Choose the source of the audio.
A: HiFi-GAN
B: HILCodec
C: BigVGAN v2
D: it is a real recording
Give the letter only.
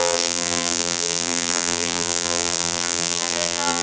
C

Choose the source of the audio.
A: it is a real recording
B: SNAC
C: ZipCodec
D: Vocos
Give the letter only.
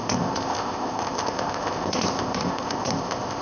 C